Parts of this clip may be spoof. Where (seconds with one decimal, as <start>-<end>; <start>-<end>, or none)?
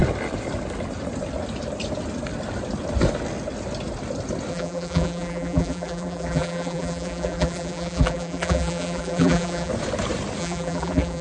4.5-9.7; 10.4-11.2